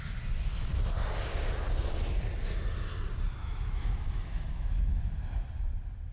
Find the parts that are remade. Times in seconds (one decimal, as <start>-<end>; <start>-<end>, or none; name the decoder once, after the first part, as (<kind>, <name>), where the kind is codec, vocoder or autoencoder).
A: 3.4-5.1 (autoencoder, DAC-VAE)